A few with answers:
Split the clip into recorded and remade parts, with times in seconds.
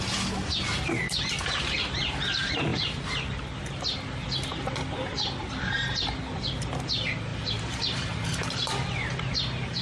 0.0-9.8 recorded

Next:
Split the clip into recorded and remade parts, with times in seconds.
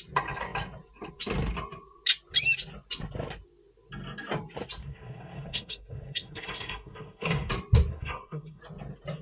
0.0-4.8 recorded; 4.8-7.5 remade; 7.5-7.9 recorded; 7.9-8.6 remade; 8.6-9.2 recorded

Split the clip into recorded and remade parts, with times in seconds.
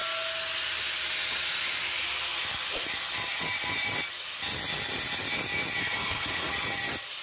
0.0-5.8 recorded; 5.8-6.5 remade; 6.5-7.2 recorded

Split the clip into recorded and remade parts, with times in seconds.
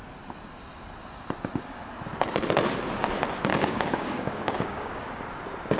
0.0-3.5 recorded; 3.5-5.0 remade; 5.0-5.8 recorded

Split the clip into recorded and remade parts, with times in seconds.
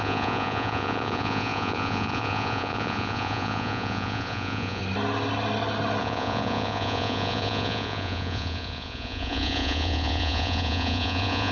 0.0-4.8 remade; 4.8-6.0 recorded; 6.0-11.5 remade